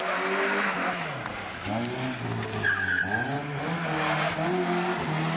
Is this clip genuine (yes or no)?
yes